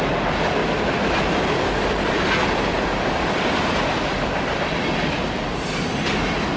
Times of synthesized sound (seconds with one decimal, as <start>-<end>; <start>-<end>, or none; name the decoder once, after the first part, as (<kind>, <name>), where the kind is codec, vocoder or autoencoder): none